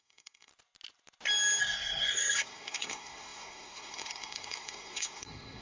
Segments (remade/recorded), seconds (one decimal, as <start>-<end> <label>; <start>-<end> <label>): 0.0-0.5 remade; 0.5-1.6 recorded; 1.6-5.6 remade